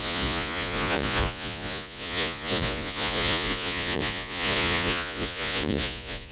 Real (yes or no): no